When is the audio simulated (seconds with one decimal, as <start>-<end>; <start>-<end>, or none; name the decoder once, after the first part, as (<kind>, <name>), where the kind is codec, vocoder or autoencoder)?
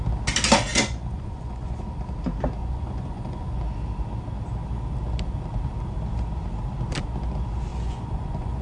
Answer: 0.7-2.0 (vocoder, Vocos); 2.6-3.6; 7.7-8.6